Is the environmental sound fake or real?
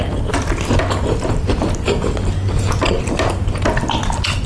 real